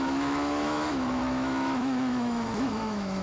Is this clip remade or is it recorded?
remade